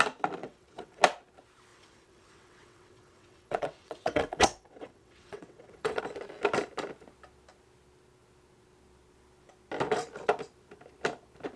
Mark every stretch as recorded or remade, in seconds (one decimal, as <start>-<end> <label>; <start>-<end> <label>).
0.0-0.4 recorded; 0.4-1.0 remade; 1.0-1.7 recorded; 1.7-6.0 remade; 6.0-11.6 recorded